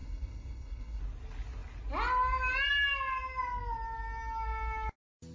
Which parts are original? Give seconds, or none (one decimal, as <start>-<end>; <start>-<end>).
1.0-5.3